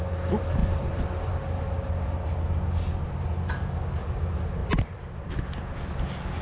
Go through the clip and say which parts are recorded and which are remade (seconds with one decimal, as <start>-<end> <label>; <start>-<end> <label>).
0.0-4.6 recorded; 4.6-5.4 remade; 5.4-6.4 recorded